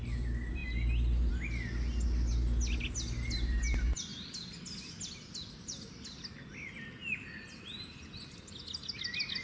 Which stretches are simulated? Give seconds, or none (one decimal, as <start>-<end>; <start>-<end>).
none